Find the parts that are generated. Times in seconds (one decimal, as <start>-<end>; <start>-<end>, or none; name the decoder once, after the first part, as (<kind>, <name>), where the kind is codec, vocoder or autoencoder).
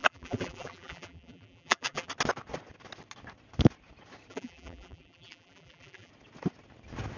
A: 0.0-2.1 (vocoder, BigVGAN v2); 4.3-6.1